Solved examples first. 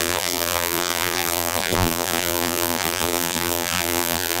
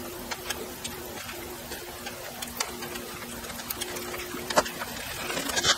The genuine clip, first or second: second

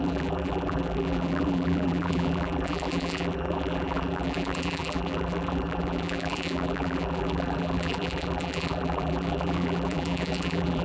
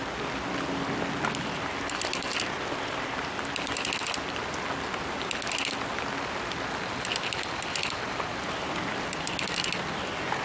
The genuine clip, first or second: second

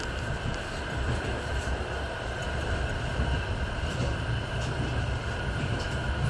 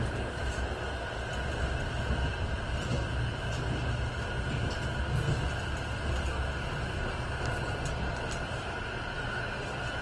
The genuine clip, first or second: second